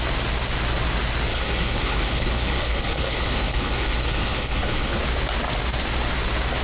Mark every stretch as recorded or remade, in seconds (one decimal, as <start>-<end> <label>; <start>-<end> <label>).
0.0-1.3 recorded; 1.3-5.0 remade; 5.0-6.6 recorded